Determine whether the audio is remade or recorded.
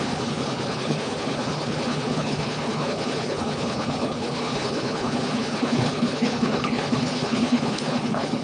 remade